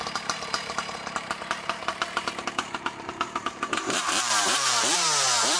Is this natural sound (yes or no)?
no